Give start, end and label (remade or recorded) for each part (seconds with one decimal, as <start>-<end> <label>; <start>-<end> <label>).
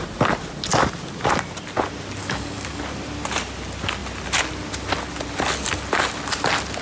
0.0-2.2 recorded; 2.2-2.8 remade; 2.8-6.8 recorded